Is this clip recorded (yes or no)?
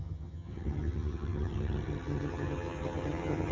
no